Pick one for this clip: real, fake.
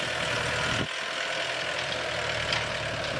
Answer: real